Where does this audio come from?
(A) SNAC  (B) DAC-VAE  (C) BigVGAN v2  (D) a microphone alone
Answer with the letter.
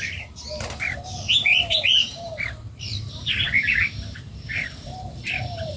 C